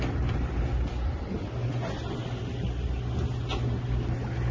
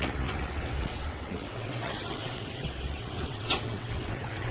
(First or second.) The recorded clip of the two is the first